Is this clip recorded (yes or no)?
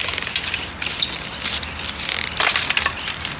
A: yes